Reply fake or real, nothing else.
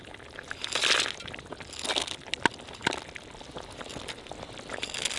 real